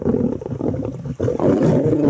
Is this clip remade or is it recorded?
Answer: recorded